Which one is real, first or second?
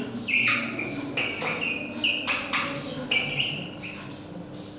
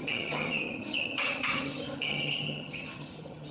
first